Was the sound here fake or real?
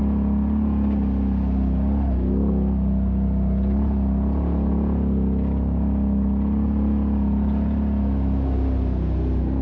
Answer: real